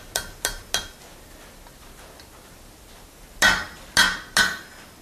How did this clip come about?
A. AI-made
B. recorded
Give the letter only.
B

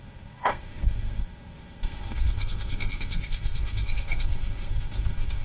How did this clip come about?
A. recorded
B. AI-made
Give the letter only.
B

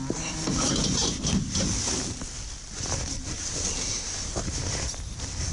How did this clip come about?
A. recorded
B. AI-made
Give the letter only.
A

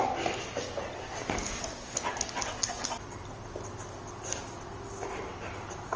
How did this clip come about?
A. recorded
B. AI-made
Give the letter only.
A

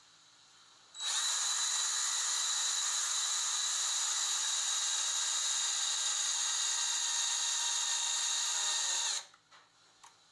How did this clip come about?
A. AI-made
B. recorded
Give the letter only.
B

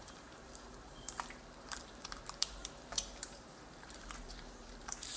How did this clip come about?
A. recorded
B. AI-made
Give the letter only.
B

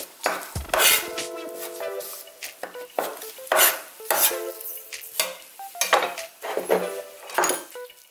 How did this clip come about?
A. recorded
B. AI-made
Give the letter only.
A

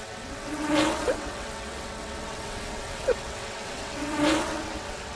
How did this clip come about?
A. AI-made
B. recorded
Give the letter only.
A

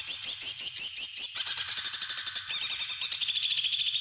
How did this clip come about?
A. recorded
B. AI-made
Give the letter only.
A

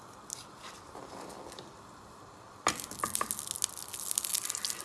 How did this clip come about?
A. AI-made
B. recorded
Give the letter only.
B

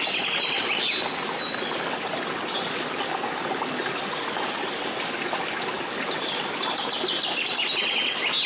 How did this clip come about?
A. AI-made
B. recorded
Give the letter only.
B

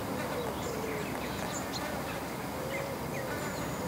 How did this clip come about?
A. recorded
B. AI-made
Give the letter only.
A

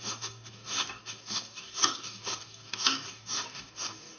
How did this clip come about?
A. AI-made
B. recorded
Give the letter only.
A